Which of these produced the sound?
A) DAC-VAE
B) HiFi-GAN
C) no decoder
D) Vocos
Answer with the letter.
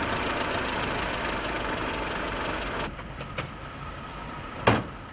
C